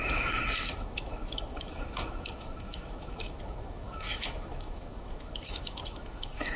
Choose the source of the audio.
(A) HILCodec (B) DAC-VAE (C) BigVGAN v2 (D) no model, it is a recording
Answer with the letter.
B